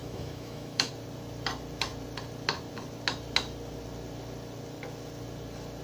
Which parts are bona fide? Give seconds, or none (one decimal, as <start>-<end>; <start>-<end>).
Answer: 0.9-5.8